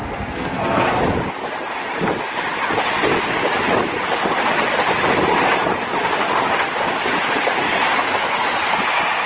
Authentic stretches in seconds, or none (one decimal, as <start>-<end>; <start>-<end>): 1.0-9.3